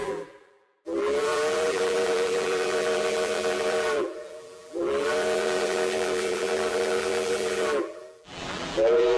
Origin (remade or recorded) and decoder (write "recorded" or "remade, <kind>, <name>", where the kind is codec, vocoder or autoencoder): remade, vocoder, BigVGAN v2